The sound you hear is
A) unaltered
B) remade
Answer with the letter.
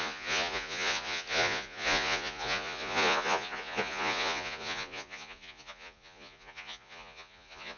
B